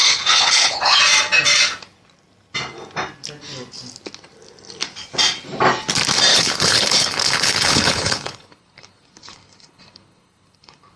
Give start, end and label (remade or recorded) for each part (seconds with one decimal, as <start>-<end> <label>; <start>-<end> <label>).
0.0-1.0 remade; 1.0-6.3 recorded; 6.3-11.0 remade